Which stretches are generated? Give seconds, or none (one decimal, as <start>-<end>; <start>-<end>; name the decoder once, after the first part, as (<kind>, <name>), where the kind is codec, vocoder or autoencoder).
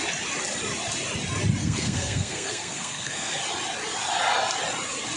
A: 1.6-3.4 (codec, SNAC)